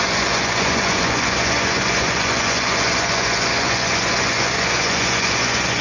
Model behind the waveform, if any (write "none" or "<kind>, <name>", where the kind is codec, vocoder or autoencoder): vocoder, Vocos